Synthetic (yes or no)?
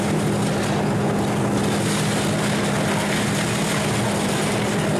no